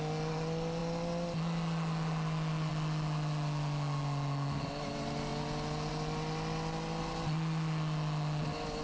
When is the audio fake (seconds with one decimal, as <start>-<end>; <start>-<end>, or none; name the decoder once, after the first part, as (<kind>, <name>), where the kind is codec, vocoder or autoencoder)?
none